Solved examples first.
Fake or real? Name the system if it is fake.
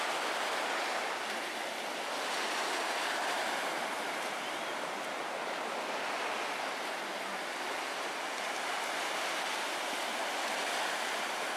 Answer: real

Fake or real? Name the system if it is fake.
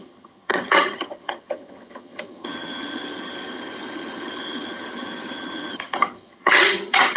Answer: fake, vocoder, HiFi-GAN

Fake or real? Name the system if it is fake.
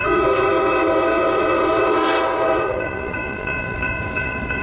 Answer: fake, vocoder, WaveNeXt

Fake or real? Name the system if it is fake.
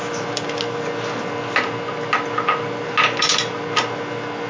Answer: real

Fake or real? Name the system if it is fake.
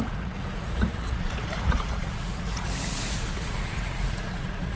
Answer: fake, vocoder, Vocos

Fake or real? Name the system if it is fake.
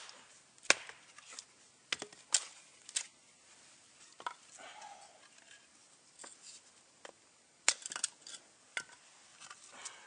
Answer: real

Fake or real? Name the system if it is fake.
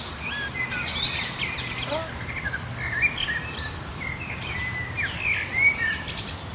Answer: real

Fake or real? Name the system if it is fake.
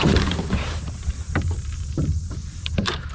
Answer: fake, vocoder, BigVGAN v2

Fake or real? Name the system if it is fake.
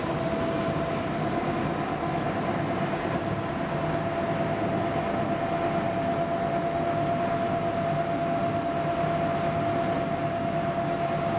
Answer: real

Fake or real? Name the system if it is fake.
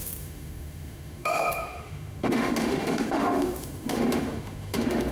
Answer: fake, autoencoder, DAC-VAE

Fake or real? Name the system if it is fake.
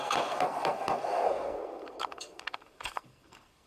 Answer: fake, codec, SNAC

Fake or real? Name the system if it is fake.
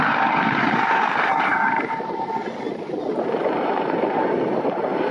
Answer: real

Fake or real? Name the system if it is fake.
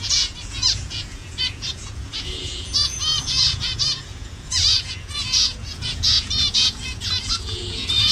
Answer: fake, vocoder, Vocos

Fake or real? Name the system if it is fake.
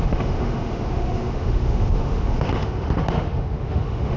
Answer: fake, autoencoder, DAC-VAE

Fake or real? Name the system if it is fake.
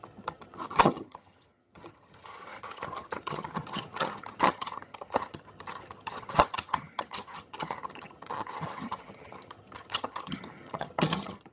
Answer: fake, vocoder, HiFi-GAN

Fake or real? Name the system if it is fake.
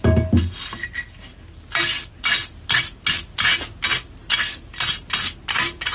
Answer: real